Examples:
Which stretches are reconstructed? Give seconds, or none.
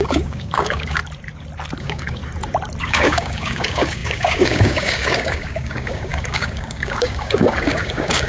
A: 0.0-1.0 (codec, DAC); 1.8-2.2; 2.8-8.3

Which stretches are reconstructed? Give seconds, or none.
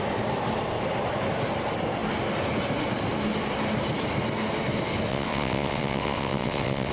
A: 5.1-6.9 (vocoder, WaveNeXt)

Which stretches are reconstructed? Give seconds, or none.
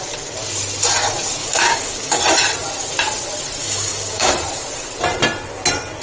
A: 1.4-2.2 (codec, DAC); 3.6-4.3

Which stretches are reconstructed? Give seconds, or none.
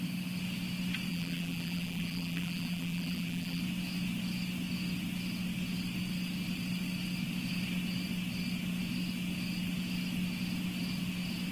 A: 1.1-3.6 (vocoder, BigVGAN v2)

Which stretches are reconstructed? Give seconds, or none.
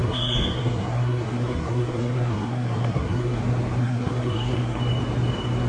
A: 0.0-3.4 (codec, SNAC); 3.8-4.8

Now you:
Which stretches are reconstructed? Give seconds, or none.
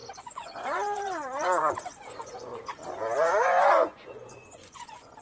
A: 0.0-2.7 (vocoder, Vocos); 3.3-5.2